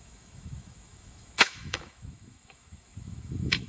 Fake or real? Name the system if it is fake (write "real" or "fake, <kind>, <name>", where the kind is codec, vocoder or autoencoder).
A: fake, autoencoder, DAC-VAE